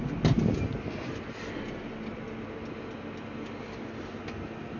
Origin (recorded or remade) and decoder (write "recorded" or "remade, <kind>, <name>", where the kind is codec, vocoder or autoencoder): recorded